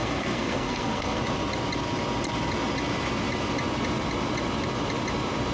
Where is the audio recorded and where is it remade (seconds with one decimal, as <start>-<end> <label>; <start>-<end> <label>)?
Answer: 0.0-1.2 remade; 1.2-5.5 recorded